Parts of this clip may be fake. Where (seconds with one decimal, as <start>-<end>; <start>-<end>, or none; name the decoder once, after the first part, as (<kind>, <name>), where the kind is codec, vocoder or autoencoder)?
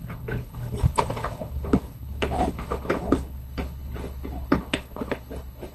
0.0-5.7 (codec, HILCodec)